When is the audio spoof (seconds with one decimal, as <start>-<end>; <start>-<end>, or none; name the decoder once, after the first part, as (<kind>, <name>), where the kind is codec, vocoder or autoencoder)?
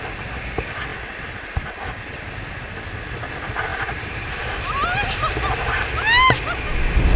none